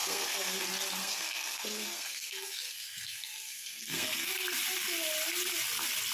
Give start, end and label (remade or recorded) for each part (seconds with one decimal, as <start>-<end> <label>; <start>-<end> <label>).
0.0-0.6 remade; 0.6-1.0 recorded; 1.0-4.3 remade; 4.3-6.1 recorded